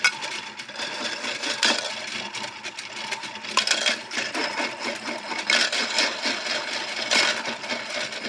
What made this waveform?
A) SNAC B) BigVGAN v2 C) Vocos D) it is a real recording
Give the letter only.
D